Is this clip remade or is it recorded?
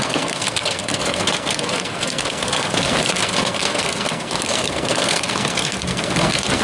remade